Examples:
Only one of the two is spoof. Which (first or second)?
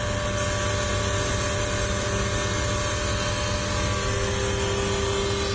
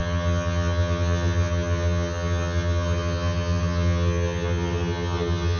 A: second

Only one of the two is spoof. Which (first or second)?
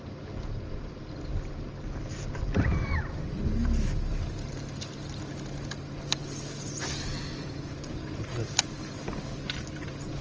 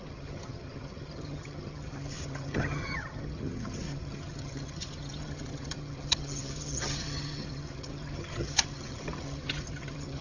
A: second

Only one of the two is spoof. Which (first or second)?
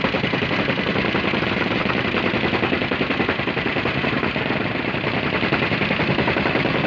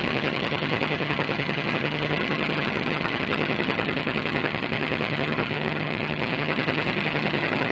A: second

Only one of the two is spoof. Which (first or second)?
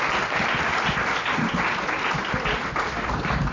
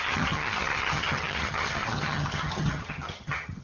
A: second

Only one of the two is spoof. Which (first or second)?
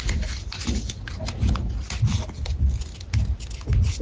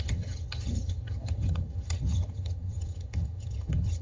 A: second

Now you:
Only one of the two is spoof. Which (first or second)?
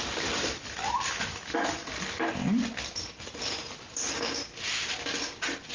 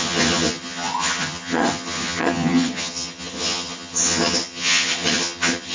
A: second